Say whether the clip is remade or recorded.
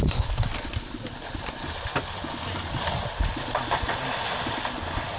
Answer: recorded